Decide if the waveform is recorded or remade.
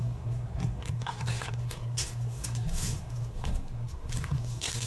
remade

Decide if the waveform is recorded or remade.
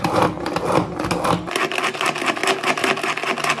recorded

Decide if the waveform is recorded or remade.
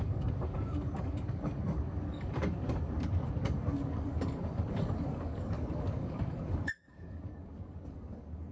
remade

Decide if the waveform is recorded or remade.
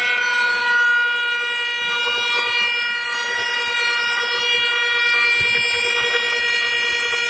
recorded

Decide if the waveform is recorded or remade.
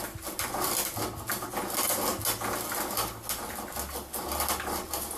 recorded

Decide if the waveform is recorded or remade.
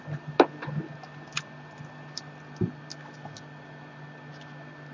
recorded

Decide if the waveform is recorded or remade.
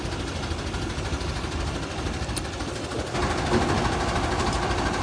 recorded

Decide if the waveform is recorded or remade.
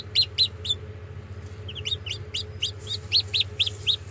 recorded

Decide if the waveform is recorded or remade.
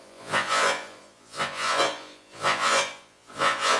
remade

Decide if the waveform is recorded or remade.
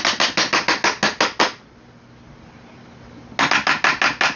recorded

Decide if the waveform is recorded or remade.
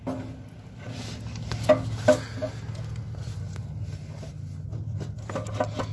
recorded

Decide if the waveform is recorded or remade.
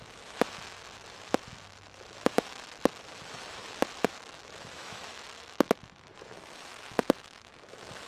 remade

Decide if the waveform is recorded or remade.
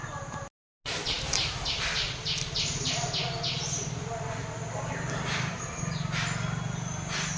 recorded